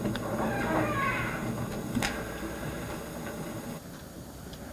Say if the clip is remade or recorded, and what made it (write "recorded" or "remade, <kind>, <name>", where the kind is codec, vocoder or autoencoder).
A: recorded